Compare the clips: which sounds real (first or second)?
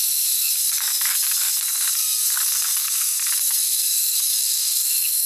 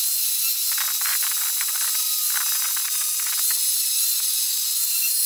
second